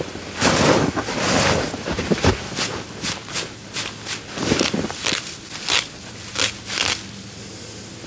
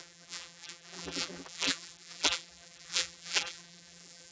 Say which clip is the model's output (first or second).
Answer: second